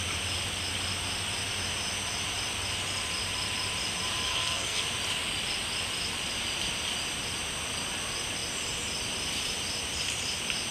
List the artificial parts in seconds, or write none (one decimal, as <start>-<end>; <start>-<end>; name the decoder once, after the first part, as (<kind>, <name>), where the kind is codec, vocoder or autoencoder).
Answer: 4.3-4.8 (codec, SNAC)